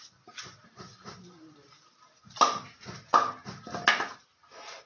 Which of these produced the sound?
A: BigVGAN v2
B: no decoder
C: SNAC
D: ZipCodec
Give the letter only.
B